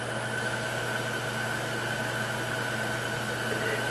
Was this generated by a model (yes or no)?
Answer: no